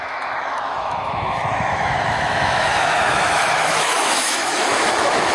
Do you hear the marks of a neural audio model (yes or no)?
yes